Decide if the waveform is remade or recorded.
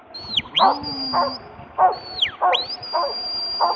recorded